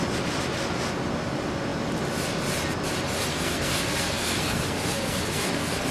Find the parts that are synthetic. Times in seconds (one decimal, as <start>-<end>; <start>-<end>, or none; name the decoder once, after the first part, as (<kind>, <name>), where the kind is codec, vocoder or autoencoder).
3.3-5.9 (codec, SNAC)